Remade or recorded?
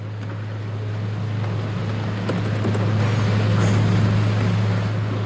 recorded